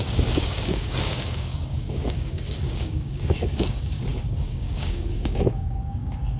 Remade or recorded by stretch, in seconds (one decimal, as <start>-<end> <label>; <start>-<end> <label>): 0.0-6.4 remade